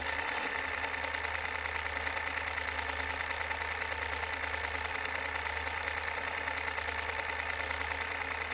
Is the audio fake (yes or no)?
no